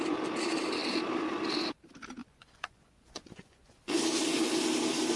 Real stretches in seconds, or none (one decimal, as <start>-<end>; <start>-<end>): 0.0-2.2; 4.0-5.2

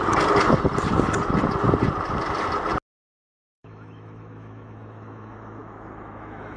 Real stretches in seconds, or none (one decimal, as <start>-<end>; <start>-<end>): 0.0-3.2

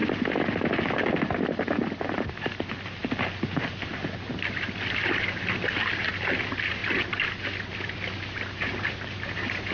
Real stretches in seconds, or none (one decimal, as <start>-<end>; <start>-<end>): 0.0-9.7

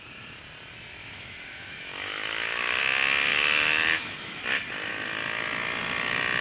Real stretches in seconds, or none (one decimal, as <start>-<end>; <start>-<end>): 0.0-1.0; 2.8-3.3; 4.4-6.4

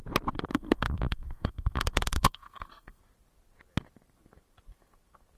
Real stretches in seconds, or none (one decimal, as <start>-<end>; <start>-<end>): 0.0-0.5; 3.0-5.4